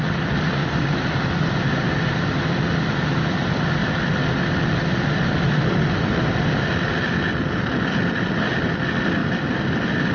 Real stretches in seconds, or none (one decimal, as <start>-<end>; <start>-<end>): 0.0-0.6; 1.3-9.2